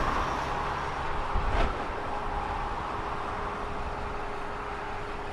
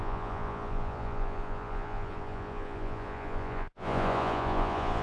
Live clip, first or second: first